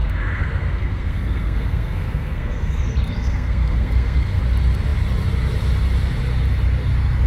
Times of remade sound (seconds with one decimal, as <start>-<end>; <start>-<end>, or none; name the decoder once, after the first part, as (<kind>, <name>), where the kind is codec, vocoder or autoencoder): 0.0-4.4 (codec, SNAC)